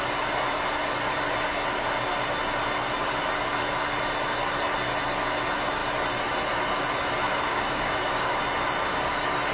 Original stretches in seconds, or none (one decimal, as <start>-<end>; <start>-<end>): 0.0-7.5; 8.4-9.5